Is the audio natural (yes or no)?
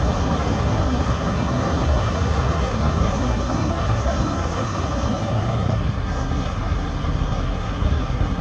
no